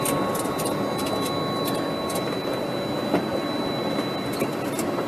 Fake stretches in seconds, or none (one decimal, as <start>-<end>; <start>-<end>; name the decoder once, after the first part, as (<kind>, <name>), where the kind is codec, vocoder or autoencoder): none